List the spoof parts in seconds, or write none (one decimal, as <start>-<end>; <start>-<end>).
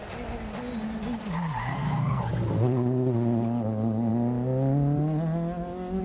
1.7-2.2